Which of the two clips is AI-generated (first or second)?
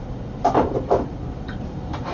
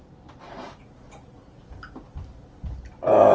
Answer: first